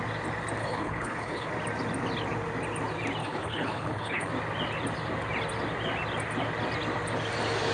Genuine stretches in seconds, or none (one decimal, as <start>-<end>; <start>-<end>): 0.0-0.6; 1.5-3.2; 4.3-7.7